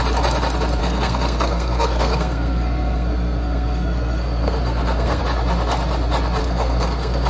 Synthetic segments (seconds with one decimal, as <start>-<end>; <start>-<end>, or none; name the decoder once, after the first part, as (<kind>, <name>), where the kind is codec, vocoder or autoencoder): 0.8-5.2 (codec, SNAC); 6.4-7.3